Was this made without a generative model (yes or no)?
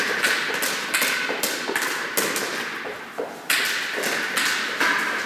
yes